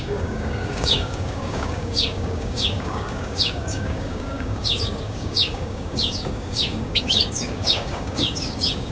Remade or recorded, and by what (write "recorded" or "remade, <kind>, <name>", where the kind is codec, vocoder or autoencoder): remade, codec, DAC